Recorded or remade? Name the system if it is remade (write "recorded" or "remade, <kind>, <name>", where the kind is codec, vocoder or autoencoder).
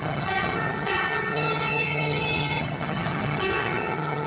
remade, vocoder, HiFi-GAN